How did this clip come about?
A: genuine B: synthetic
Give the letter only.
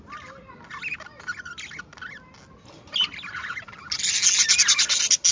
A